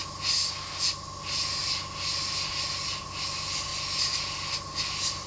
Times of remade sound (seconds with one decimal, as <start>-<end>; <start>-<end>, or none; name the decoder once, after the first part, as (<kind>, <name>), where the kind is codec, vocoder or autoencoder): none